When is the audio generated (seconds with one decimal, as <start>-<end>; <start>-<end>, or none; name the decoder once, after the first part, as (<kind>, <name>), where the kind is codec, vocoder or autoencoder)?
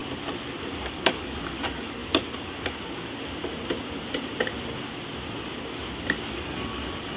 0.9-2.0 (codec, DAC); 6.3-7.2